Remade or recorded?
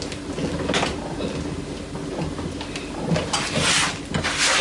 recorded